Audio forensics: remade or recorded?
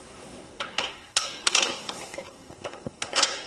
remade